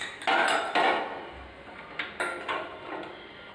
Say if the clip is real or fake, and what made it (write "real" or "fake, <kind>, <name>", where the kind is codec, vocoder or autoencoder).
real